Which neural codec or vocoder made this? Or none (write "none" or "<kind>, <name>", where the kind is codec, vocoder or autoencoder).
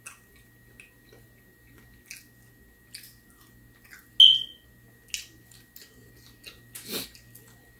none